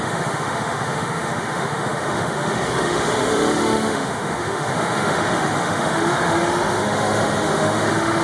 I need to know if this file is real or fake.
fake